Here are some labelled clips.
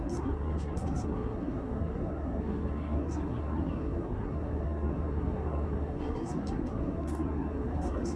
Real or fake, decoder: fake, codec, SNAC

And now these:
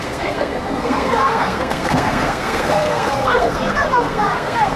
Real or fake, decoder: fake, codec, SNAC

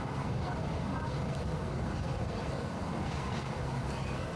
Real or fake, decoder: fake, codec, SNAC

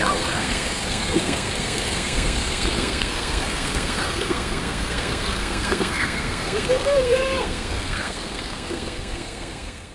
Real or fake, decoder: fake, codec, SNAC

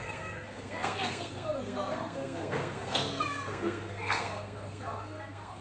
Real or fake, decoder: fake, codec, SNAC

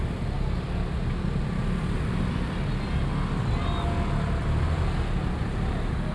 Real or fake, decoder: real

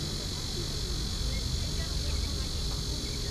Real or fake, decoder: real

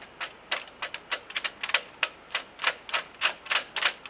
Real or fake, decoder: real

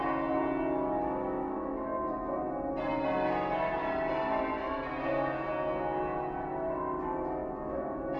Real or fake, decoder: real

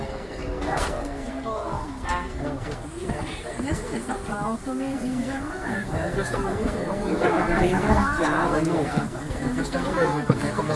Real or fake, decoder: fake, codec, SNAC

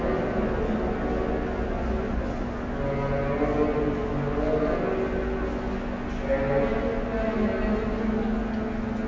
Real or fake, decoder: real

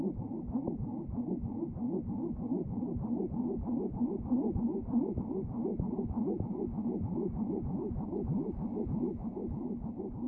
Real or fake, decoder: real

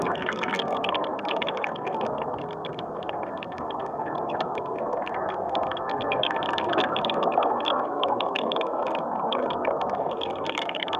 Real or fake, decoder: fake, codec, SNAC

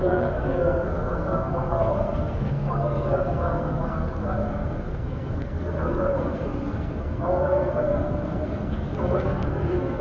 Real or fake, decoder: fake, codec, SNAC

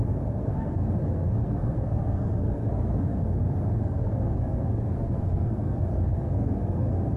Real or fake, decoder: fake, codec, SNAC